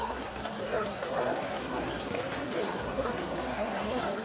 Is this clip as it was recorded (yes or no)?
no